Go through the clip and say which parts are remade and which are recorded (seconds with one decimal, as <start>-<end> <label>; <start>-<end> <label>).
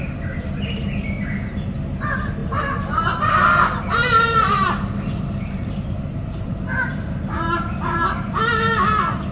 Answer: 0.0-2.4 recorded; 2.4-3.2 remade; 3.2-9.3 recorded